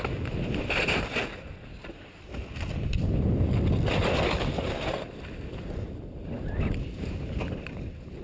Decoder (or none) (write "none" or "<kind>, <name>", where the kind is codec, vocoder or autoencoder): none